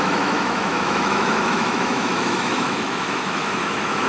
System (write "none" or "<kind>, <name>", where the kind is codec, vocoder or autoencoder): autoencoder, DAC-VAE